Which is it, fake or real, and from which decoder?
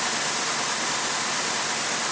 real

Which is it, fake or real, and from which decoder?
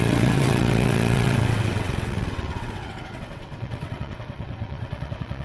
fake, vocoder, WaveNeXt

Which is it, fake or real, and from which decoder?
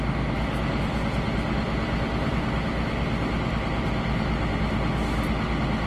real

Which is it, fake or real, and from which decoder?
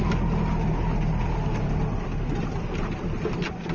real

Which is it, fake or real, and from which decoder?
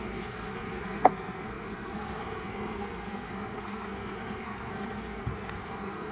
fake, codec, SNAC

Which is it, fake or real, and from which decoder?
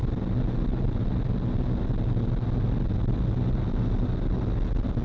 real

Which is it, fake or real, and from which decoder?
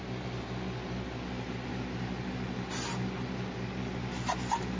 real